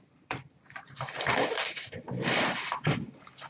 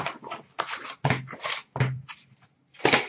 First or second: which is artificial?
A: first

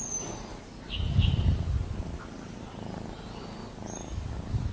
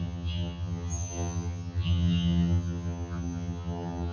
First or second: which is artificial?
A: second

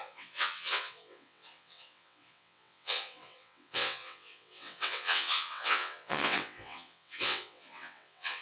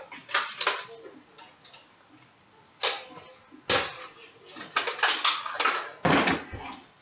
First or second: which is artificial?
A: first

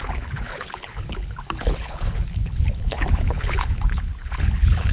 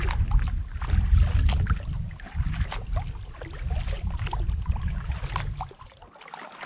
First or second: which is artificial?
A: first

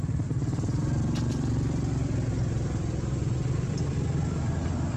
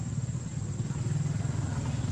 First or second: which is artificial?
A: first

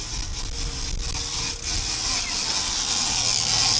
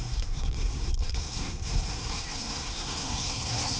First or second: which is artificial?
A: second